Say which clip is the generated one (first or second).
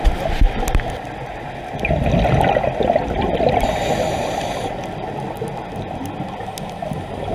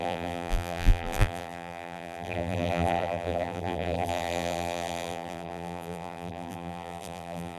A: second